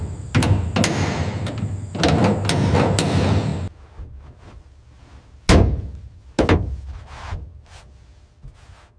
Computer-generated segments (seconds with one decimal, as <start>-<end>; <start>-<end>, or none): none